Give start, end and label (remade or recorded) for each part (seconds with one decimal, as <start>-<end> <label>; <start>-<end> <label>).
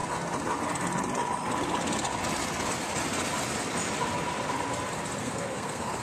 0.0-5.2 recorded; 5.2-6.0 remade